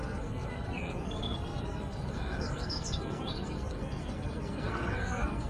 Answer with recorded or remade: remade